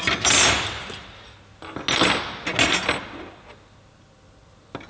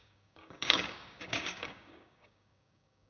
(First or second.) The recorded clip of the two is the first